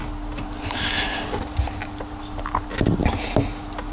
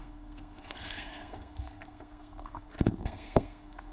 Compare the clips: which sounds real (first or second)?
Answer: first